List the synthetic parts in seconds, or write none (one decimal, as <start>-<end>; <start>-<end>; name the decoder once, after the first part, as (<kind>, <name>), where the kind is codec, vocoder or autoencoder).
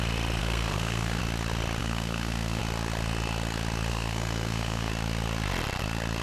0.4-1.2 (codec, SNAC); 1.8-2.6; 3.9-4.9